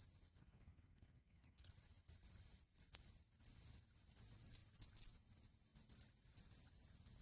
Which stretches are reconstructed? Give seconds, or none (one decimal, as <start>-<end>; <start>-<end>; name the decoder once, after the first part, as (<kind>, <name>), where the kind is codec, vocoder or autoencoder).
0.4-1.7 (codec, SNAC)